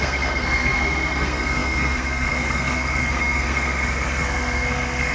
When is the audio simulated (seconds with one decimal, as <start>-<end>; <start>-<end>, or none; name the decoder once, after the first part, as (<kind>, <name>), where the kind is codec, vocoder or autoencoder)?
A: 0.0-5.1 (codec, SNAC)